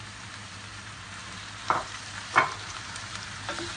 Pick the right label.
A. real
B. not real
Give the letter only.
B